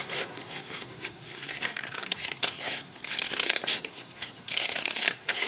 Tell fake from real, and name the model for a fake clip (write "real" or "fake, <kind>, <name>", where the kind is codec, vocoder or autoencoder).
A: fake, codec, SNAC